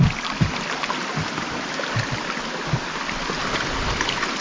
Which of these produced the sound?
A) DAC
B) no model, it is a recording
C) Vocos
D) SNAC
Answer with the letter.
B